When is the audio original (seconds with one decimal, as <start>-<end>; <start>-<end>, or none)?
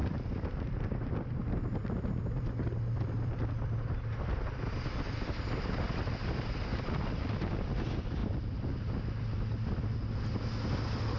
4.6-6.7; 7.5-11.2